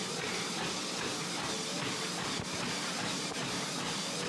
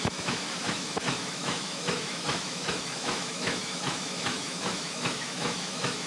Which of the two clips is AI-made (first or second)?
second